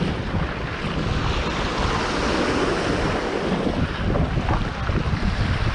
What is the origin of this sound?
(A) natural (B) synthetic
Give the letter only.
A